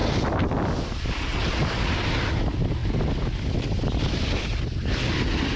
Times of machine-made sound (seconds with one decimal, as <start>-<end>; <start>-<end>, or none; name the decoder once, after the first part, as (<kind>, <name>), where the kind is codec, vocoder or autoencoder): none